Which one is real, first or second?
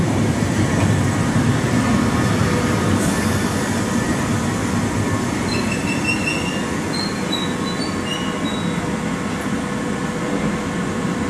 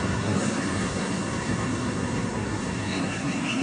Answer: first